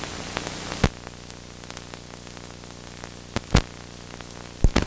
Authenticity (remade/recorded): recorded